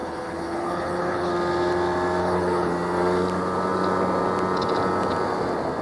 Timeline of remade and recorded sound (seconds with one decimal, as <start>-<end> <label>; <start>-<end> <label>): 0.0-1.3 remade; 1.3-2.2 recorded; 2.2-2.7 remade; 2.7-5.8 recorded